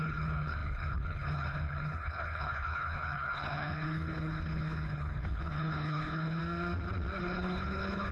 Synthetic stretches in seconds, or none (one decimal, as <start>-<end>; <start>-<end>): 0.0-6.4; 7.2-8.1